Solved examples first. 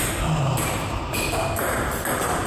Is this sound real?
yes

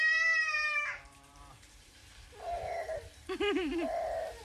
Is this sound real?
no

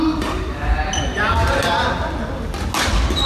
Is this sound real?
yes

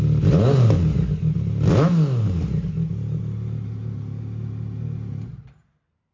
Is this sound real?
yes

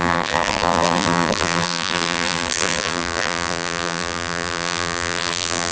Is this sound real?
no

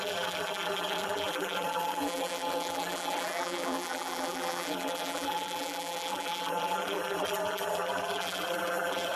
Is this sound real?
no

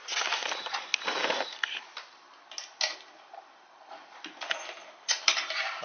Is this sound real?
yes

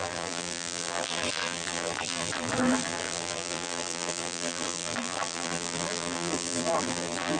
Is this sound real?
no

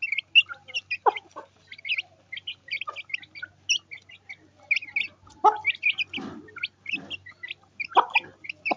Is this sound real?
yes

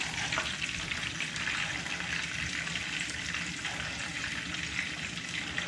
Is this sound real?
no